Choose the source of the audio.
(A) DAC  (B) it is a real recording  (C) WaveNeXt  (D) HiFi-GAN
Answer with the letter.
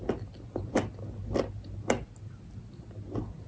B